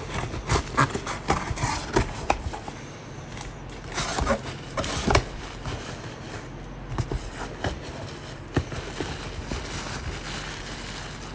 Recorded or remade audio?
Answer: recorded